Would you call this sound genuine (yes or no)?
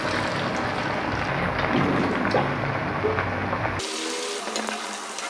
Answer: yes